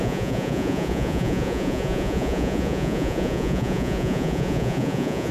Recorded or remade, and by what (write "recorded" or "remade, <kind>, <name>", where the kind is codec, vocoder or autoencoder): remade, vocoder, Vocos